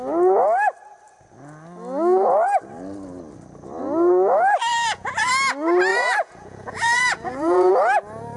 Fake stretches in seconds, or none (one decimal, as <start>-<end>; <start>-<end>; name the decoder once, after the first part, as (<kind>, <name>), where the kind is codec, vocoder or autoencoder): 4.7-5.3 (vocoder, Vocos); 5.9-7.7